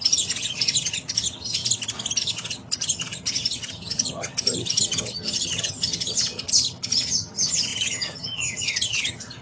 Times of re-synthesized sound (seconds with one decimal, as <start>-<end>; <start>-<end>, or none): 0.0-1.6; 2.2-9.4